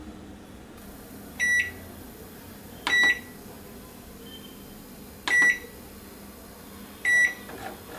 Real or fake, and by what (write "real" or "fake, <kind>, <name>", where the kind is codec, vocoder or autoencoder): real